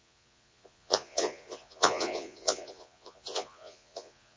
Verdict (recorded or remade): remade